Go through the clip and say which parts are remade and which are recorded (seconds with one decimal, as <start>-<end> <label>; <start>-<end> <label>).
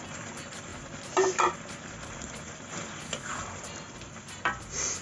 0.0-5.0 remade